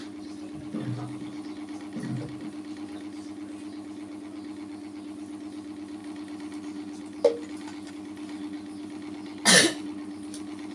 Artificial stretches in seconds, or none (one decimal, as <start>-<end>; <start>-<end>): none